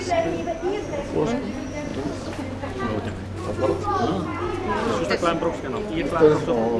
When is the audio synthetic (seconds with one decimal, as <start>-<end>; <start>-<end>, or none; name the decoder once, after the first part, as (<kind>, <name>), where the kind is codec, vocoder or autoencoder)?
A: none